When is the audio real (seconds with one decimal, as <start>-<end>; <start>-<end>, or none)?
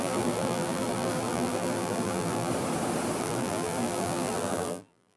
2.5-3.2